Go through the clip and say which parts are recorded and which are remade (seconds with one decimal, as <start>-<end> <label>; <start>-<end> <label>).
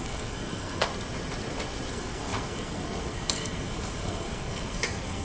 0.0-0.9 remade; 0.9-1.9 recorded; 1.9-5.2 remade